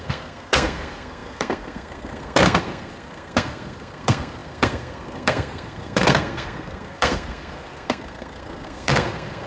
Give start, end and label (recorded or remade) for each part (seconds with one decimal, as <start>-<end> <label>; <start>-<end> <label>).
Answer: 0.0-9.5 remade